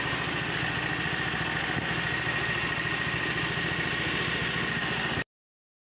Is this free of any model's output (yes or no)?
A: yes